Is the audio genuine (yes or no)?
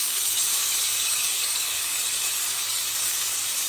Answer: no